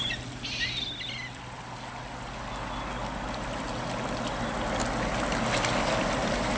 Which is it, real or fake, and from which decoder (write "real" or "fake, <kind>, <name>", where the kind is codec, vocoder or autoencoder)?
real